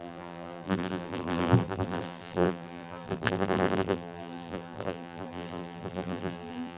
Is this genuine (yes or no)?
no